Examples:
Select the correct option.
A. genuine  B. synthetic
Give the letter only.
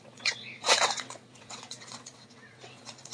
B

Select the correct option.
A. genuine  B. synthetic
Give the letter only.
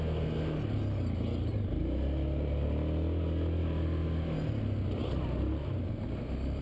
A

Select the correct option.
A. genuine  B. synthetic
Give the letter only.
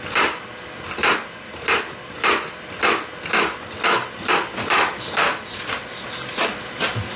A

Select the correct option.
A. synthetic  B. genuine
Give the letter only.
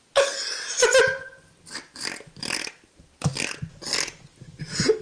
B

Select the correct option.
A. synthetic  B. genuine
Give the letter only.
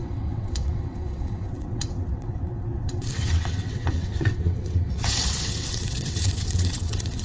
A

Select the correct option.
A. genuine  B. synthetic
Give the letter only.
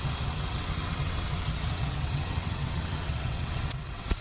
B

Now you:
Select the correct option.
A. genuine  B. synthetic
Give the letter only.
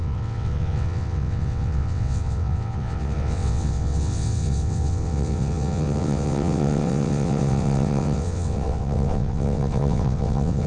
B